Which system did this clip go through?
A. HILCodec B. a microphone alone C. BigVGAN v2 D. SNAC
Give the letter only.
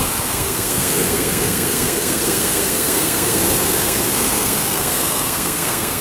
D